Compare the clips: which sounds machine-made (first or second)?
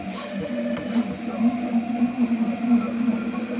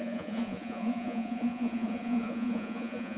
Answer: second